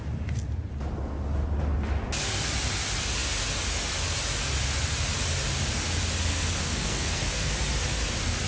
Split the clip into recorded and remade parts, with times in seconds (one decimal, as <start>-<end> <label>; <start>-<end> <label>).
0.0-6.3 recorded; 6.3-7.5 remade; 7.5-8.5 recorded